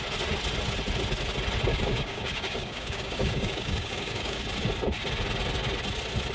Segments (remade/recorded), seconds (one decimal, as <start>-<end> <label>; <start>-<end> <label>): 0.0-1.7 recorded; 1.7-4.4 remade; 4.4-6.3 recorded

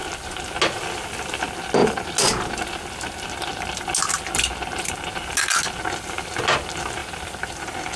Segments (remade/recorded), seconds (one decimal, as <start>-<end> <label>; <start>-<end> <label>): 0.0-8.0 recorded

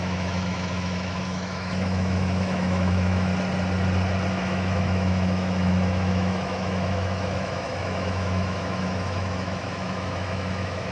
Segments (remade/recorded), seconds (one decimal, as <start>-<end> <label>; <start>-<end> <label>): 0.0-3.3 remade; 3.3-4.3 recorded; 4.3-10.9 remade

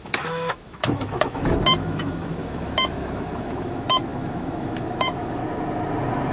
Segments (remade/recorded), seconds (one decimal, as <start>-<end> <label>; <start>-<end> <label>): 0.0-5.4 remade; 5.4-6.3 recorded

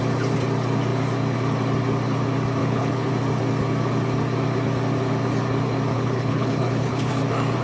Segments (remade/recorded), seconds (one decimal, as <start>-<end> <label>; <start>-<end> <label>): 0.0-2.6 recorded; 2.6-3.1 remade; 3.1-5.9 recorded; 5.9-7.1 remade; 7.1-7.6 recorded

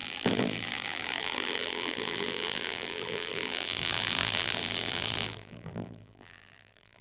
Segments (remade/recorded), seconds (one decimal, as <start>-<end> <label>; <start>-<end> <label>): 0.0-7.0 remade